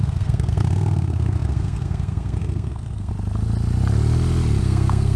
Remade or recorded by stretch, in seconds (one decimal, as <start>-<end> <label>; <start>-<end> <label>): 0.0-3.1 remade; 3.1-4.6 recorded; 4.6-5.2 remade